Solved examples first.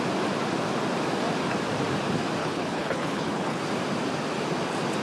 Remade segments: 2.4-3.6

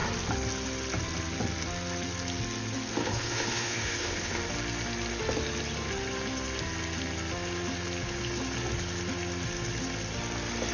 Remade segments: 3.0-4.4